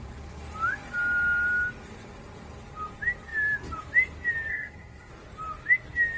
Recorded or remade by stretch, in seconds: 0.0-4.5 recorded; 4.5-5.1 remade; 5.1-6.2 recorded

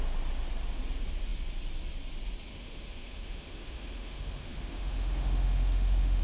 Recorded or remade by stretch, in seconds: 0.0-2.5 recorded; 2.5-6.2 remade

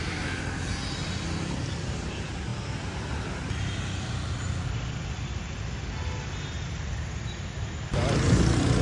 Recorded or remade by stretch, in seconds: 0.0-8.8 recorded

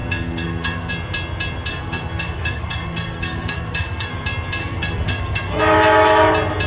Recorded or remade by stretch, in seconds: 0.0-0.9 remade; 0.9-1.7 recorded; 1.7-4.1 remade; 4.1-4.6 recorded; 4.6-5.6 remade; 5.6-6.7 recorded

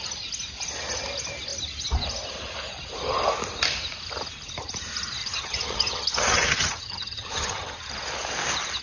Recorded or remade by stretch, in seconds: 0.0-5.2 recorded; 5.2-7.9 remade; 7.9-8.8 recorded

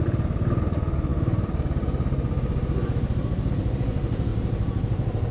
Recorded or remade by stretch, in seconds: 0.0-1.1 recorded; 1.1-3.5 remade; 3.5-4.3 recorded; 4.3-5.3 remade

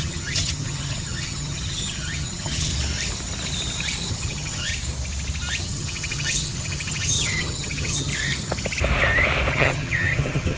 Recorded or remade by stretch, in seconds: 0.0-2.7 remade; 2.7-4.1 recorded; 4.1-4.7 remade; 4.7-5.6 recorded; 5.6-8.1 remade; 8.1-9.5 recorded; 9.5-10.6 remade

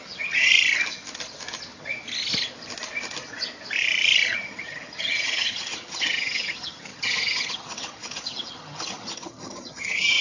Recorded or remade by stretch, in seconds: 0.0-0.5 remade; 0.5-4.3 recorded; 4.3-10.2 remade